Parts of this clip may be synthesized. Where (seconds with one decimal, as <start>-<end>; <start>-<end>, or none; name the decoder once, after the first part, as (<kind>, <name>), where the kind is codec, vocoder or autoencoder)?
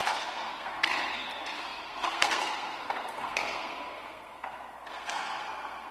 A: 0.0-5.9 (codec, SNAC)